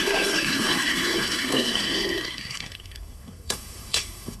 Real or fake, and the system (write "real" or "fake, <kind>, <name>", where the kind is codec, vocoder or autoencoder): fake, codec, SNAC